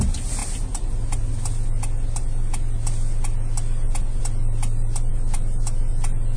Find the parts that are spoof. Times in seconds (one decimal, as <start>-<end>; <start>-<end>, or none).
none